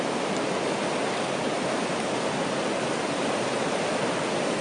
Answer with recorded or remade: recorded